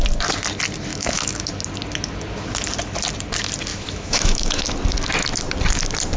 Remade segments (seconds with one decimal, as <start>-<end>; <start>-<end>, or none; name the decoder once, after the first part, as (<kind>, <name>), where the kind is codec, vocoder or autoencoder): 0.9-1.5 (autoencoder, DAC-VAE); 3.7-4.6